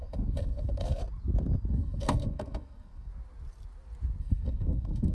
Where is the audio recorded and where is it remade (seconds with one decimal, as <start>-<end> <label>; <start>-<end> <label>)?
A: 0.0-1.0 remade; 1.0-1.7 recorded; 1.7-3.1 remade; 3.1-4.2 recorded; 4.2-5.1 remade